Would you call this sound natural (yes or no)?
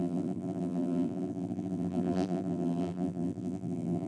no